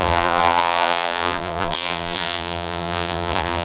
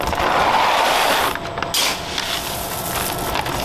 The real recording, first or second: second